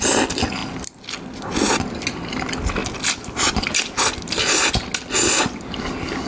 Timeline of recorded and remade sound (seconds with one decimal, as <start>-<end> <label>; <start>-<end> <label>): 0.0-6.3 recorded